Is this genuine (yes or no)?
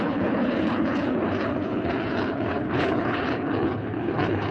no